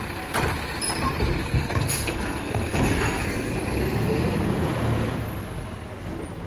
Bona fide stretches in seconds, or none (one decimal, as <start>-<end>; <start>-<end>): 0.0-1.4; 3.5-6.5